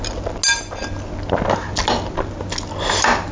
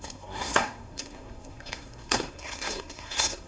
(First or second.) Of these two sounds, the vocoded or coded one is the second